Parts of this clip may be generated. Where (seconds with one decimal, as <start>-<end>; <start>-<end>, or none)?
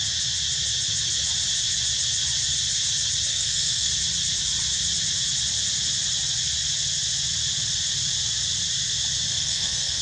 3.3-3.9; 9.3-10.0